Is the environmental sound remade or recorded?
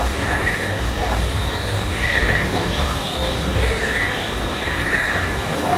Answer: remade